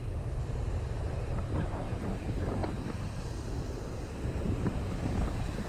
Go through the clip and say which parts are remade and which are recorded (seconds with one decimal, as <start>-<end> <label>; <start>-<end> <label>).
0.0-2.6 recorded; 2.6-3.1 remade; 3.1-5.7 recorded